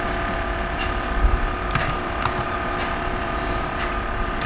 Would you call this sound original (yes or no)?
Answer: no